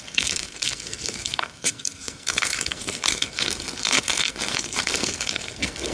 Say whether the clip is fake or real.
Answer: fake